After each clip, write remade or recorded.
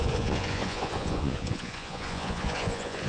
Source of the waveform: remade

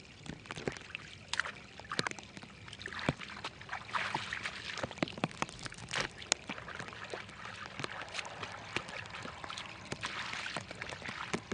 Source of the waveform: recorded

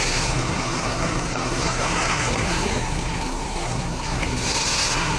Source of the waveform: remade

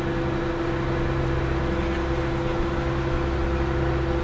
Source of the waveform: recorded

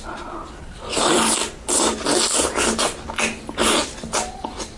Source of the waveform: recorded